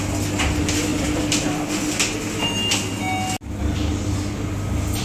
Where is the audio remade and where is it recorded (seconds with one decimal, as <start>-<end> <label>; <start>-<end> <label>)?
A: 0.0-5.0 recorded